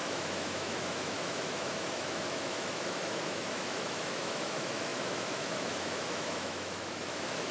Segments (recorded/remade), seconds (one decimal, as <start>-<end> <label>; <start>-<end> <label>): 0.0-7.5 remade